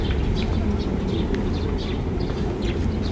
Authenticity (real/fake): real